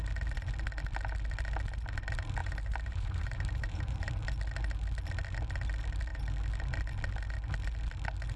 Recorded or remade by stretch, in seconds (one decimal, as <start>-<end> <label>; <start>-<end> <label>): 0.0-2.4 recorded; 2.4-4.1 remade; 4.1-8.4 recorded

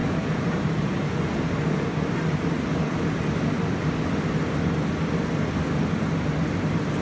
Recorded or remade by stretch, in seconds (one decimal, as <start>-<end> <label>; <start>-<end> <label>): 0.0-3.4 remade; 3.4-7.0 recorded

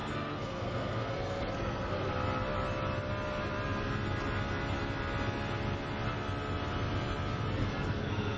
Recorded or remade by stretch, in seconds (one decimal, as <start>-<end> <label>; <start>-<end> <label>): 0.0-2.1 remade; 2.1-7.6 recorded; 7.6-8.4 remade

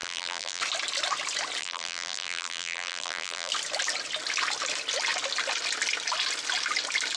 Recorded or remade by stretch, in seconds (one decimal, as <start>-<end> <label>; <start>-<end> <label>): 0.0-0.6 remade; 0.6-1.6 recorded; 1.6-3.5 remade; 3.5-7.2 recorded